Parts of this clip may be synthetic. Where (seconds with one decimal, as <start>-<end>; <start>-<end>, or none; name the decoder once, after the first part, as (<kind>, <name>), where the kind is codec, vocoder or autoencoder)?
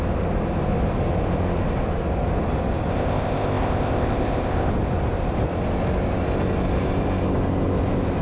2.9-4.7 (codec, ZipCodec)